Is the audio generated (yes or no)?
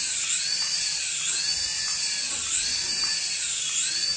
no